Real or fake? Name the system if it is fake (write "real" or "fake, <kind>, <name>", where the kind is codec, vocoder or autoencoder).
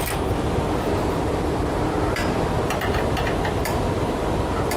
real